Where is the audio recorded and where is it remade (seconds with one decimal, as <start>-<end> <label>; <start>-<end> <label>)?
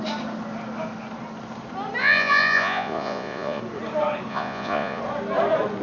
0.0-2.0 recorded; 2.0-3.6 remade; 3.6-4.3 recorded; 4.3-5.0 remade; 5.0-5.8 recorded